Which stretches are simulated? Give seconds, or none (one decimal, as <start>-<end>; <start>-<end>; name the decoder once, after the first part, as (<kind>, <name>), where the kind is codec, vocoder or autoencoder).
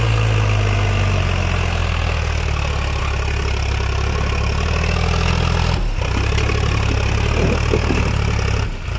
none